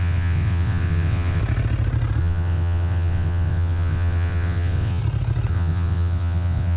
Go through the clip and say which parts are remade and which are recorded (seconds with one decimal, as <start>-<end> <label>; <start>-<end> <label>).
0.0-1.4 remade; 1.4-2.2 recorded; 2.2-5.0 remade; 5.0-5.5 recorded; 5.5-6.8 remade